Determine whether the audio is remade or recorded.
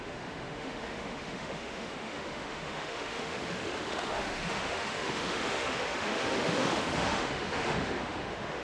remade